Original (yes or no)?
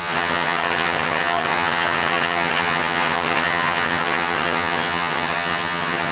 no